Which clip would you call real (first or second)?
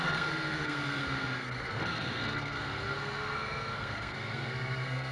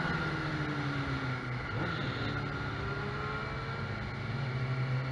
second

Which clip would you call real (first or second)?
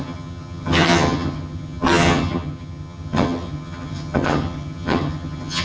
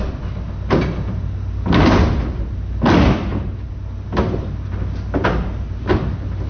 second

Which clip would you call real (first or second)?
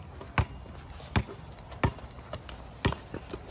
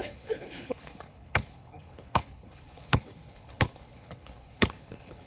first